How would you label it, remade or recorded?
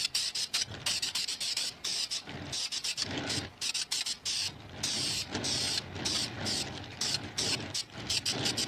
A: recorded